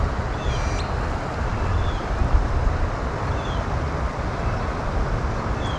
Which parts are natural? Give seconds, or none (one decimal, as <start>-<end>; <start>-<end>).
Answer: 0.0-5.8